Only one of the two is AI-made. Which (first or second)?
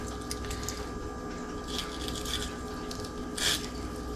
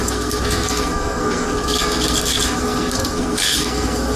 second